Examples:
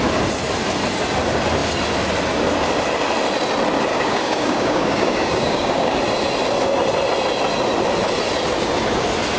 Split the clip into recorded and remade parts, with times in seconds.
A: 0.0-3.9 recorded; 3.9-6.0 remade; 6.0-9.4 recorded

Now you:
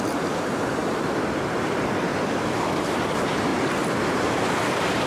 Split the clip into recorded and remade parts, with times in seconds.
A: 0.0-5.1 remade

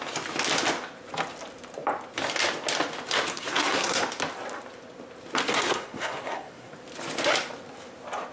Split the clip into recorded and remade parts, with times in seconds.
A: 0.0-3.3 recorded; 3.3-4.0 remade; 4.0-5.5 recorded; 5.5-6.7 remade; 6.7-8.3 recorded

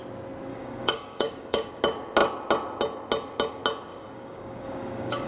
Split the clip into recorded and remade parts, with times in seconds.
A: 0.0-0.5 recorded; 0.5-1.8 remade; 1.8-3.9 recorded; 3.9-5.3 remade

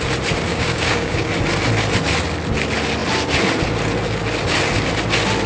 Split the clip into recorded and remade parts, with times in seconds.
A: 0.0-0.5 recorded; 0.5-1.3 remade; 1.3-5.5 recorded

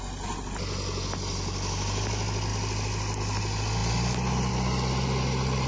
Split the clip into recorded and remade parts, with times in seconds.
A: 0.0-2.5 recorded; 2.5-3.2 remade; 3.2-5.7 recorded